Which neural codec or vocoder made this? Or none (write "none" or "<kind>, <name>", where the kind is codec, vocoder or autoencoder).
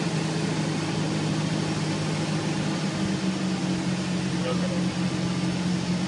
none